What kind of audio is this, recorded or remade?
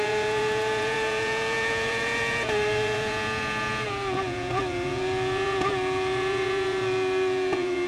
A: remade